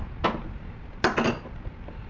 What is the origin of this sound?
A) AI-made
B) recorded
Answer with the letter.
B